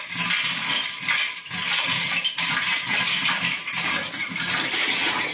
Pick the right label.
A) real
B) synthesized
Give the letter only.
A